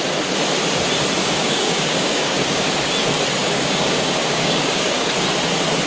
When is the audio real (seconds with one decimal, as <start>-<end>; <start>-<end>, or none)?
0.0-1.2; 2.7-3.4; 5.1-5.9